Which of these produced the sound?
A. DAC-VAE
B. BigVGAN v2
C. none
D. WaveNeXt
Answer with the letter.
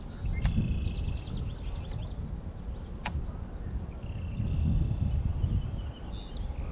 C